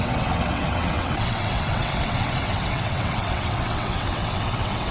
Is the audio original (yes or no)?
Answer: no